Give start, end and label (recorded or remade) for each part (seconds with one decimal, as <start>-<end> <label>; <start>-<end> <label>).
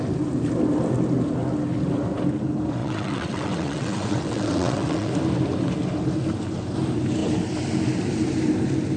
0.0-2.8 recorded; 2.8-5.1 remade; 5.1-9.0 recorded